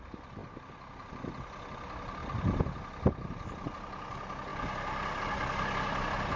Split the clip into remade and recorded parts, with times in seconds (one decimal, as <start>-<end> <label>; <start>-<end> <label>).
0.0-6.4 recorded